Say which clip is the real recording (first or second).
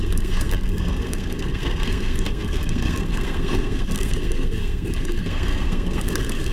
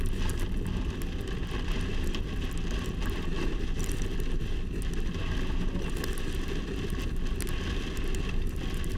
second